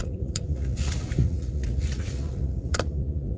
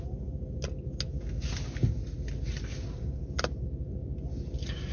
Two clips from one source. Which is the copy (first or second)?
first